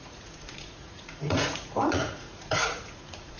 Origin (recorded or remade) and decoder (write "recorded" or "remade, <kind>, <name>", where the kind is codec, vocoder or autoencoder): remade, vocoder, Vocos